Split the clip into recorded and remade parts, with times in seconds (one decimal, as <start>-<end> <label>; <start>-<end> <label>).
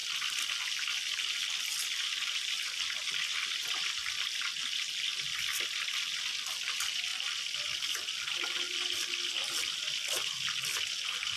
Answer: 0.0-11.4 recorded